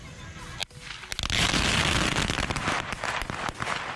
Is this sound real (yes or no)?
yes